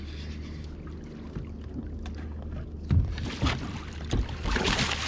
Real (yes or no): yes